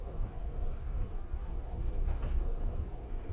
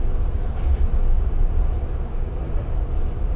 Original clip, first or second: second